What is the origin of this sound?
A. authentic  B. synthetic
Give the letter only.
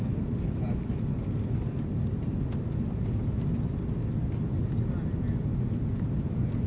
A